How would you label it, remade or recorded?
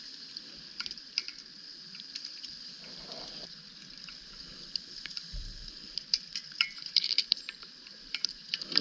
remade